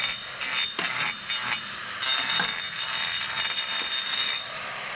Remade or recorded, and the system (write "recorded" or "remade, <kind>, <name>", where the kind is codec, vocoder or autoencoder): recorded